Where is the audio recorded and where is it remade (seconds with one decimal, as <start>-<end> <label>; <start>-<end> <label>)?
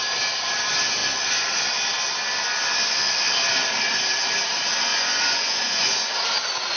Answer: 0.0-4.9 recorded; 4.9-6.1 remade; 6.1-6.8 recorded